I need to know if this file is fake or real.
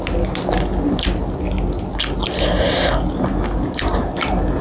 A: real